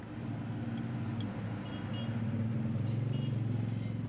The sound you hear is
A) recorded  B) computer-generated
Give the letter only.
A